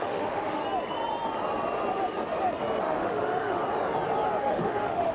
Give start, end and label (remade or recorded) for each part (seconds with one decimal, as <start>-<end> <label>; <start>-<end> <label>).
0.0-0.6 remade; 0.6-2.8 recorded; 2.8-3.6 remade; 3.6-4.4 recorded; 4.4-5.1 remade

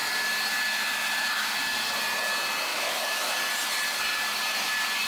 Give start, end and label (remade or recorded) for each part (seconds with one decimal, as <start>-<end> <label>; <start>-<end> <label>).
0.0-2.7 recorded; 2.7-3.3 remade; 3.3-5.1 recorded

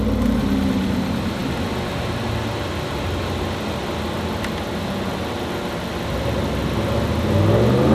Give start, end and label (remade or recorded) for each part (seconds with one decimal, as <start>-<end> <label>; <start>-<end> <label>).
0.0-7.9 recorded

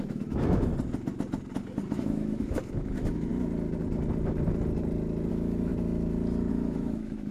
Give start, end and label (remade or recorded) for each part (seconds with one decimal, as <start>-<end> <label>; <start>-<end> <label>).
0.0-0.7 remade; 0.7-1.9 recorded; 1.9-3.3 remade; 3.3-5.3 recorded; 5.3-5.7 remade; 5.7-6.5 recorded; 6.5-7.3 remade